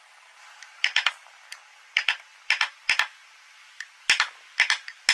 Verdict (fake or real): real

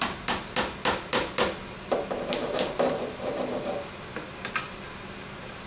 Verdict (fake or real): real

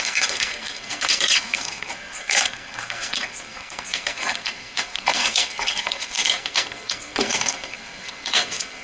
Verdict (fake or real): fake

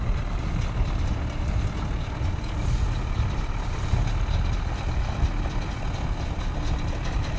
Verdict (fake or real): real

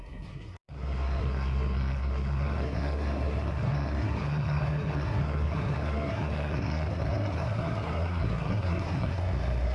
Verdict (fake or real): fake